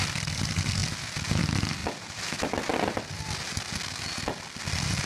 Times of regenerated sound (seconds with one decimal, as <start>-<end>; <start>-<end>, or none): none

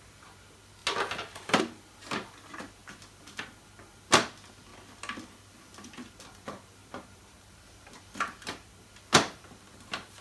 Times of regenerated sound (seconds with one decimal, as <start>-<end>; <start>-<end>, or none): 6.8-7.6

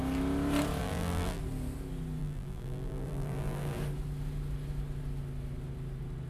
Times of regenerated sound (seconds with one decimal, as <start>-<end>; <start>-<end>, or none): 0.8-1.4; 2.2-3.8

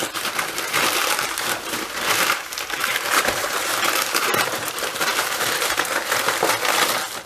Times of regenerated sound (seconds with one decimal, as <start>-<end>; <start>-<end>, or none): 1.0-5.4